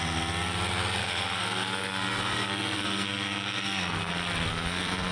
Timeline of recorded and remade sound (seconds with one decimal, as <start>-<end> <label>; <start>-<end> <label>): 0.0-1.0 recorded; 1.0-4.1 remade; 4.1-4.5 recorded; 4.5-5.1 remade